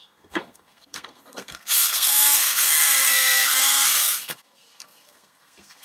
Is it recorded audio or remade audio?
remade